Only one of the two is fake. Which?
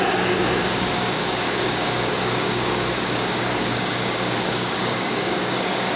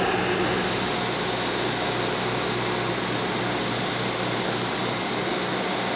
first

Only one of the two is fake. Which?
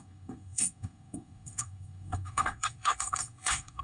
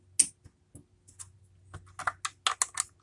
first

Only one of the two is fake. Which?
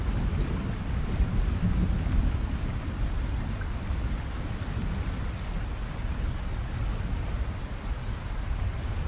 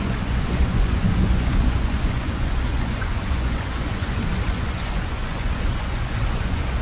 second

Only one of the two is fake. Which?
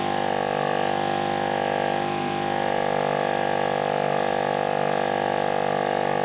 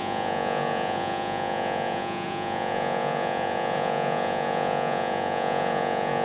second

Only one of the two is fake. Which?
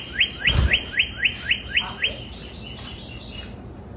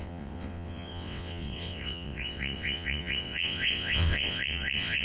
second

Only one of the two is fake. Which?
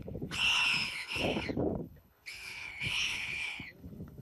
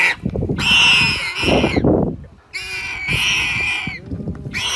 first